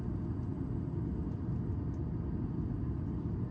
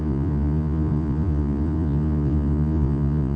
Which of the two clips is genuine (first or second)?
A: first